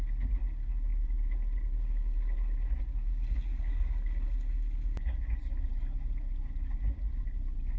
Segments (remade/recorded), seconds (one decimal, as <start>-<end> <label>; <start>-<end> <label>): 0.0-7.8 recorded